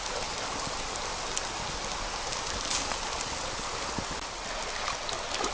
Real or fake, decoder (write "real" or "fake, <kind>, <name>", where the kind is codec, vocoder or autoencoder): real